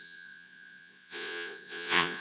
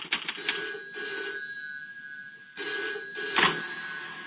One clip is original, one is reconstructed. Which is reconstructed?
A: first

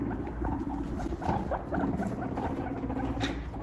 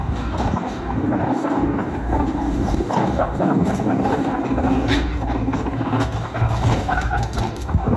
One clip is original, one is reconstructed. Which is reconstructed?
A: second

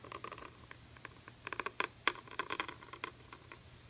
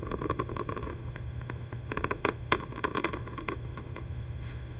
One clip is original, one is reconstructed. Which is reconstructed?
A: second